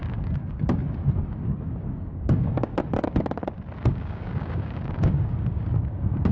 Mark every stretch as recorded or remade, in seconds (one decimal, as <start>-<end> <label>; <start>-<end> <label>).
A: 0.0-0.8 remade; 0.8-1.3 recorded; 1.3-2.7 remade; 2.7-3.9 recorded; 3.9-6.3 remade